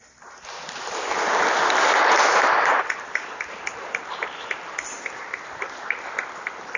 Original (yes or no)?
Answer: yes